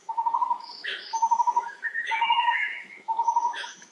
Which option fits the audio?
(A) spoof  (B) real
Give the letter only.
A